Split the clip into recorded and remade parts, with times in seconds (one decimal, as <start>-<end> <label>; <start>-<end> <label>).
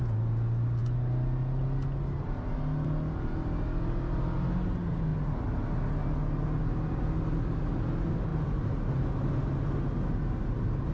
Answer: 0.0-10.9 recorded